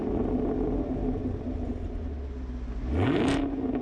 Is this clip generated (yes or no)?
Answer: no